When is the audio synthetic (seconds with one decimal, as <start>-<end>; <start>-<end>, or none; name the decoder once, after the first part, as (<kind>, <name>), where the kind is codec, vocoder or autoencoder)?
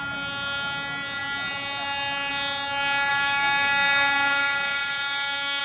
3.1-5.6 (codec, DAC)